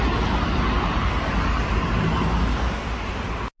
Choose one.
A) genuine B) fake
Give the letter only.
A